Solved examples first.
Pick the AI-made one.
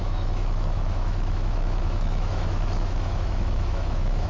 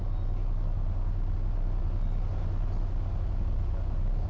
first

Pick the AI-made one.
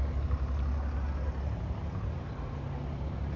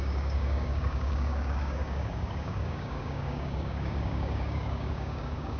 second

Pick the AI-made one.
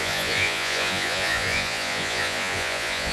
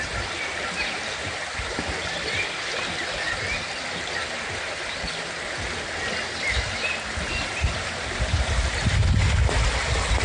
first